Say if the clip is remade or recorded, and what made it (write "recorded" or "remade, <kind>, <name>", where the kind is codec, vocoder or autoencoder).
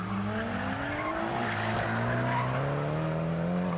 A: recorded